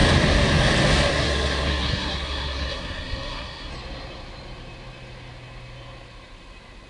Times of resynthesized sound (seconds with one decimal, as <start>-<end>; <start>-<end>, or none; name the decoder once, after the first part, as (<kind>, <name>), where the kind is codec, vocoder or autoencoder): 1.1-3.7 (codec, SNAC)